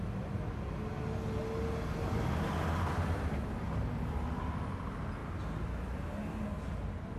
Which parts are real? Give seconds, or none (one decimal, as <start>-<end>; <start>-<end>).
0.0-7.2